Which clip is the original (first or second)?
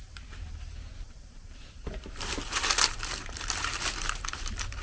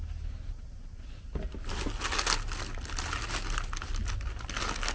second